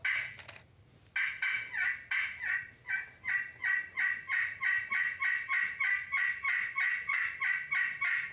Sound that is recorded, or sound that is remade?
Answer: recorded